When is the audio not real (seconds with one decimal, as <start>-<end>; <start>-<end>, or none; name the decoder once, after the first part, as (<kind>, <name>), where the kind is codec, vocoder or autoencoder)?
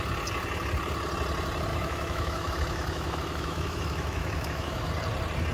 1.7-4.9 (autoencoder, DAC-VAE)